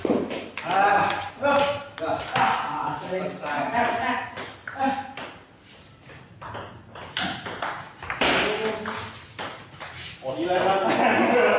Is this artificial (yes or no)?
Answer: no